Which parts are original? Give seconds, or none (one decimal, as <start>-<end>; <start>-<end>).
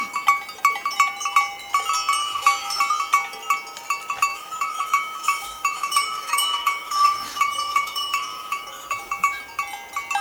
0.0-2.2; 2.8-4.3; 9.4-10.2